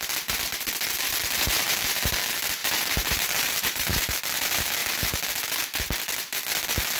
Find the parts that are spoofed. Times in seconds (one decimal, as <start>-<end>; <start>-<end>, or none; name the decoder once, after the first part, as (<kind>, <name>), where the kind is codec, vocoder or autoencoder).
1.2-2.1 (vocoder, BigVGAN v2); 2.6-4.2